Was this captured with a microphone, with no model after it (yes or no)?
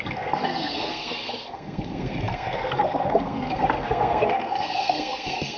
no